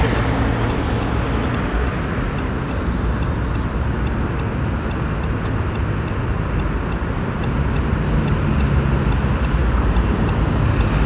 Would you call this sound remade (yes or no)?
no